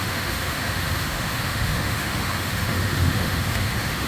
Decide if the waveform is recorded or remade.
remade